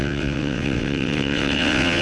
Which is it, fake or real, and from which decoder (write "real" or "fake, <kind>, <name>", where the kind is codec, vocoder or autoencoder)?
fake, vocoder, WaveNeXt